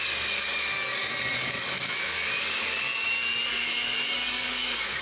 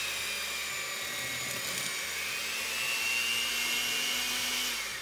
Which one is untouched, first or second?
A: second